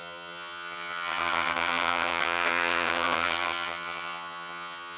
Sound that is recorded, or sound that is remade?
remade